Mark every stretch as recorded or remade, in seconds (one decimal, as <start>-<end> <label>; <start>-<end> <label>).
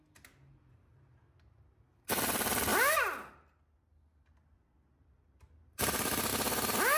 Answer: 0.0-2.7 remade; 2.7-4.3 recorded; 4.3-6.3 remade; 6.3-7.0 recorded